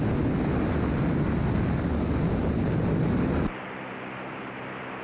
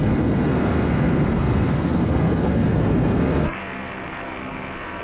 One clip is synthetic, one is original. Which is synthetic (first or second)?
second